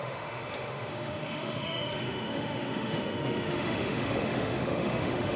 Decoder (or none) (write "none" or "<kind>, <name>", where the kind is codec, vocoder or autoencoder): autoencoder, DAC-VAE